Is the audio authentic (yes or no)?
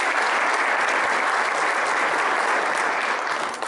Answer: yes